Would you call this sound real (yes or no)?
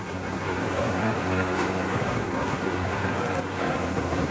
no